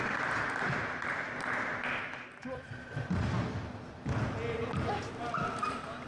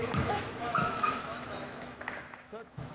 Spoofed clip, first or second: second